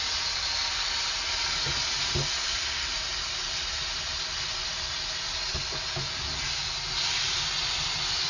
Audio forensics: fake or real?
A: real